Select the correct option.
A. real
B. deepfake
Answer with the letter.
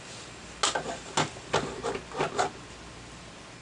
A